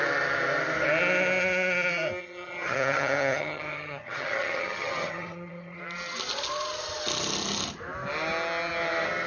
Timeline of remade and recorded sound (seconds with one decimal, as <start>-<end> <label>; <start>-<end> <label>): 0.0-2.2 recorded; 2.2-5.8 remade; 5.8-9.3 recorded